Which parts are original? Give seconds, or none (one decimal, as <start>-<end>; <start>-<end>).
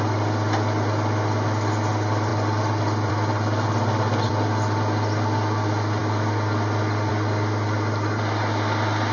0.0-9.1